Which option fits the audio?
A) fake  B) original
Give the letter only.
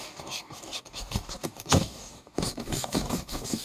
A